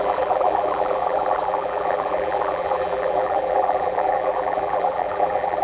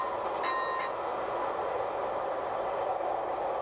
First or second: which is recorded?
second